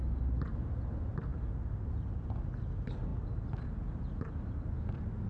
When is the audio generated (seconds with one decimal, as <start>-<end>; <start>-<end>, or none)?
none